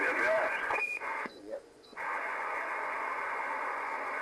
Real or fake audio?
fake